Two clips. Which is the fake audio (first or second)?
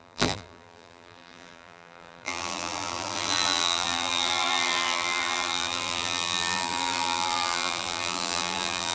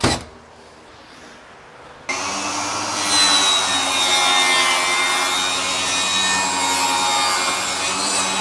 first